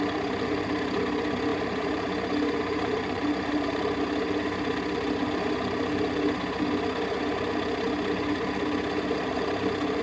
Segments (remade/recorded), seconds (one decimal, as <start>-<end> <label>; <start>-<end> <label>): 0.0-1.5 recorded; 1.5-4.0 remade; 4.0-10.0 recorded